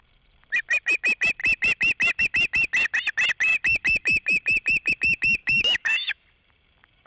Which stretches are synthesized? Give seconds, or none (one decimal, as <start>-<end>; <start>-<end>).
5.4-6.2